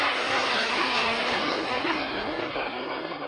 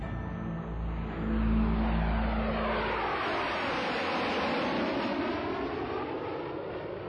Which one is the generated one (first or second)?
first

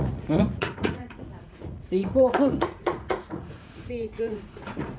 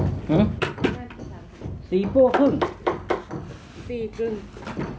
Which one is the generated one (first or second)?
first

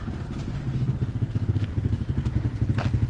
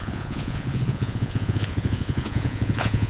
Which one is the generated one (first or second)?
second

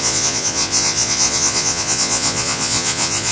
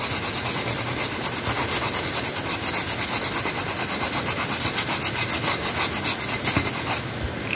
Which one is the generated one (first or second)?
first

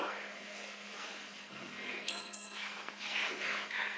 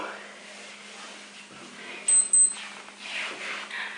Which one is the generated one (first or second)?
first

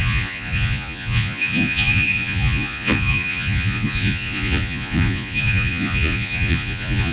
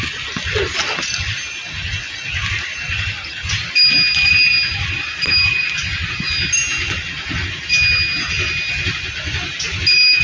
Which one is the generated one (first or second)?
first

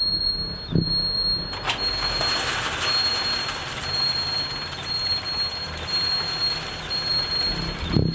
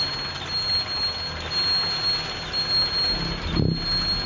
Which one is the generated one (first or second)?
first